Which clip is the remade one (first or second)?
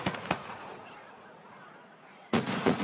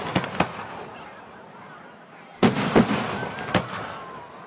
first